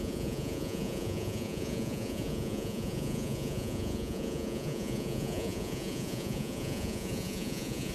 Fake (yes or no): yes